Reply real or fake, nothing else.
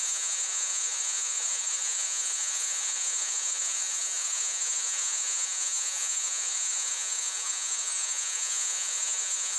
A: fake